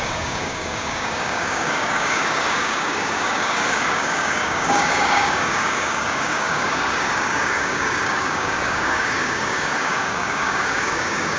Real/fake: fake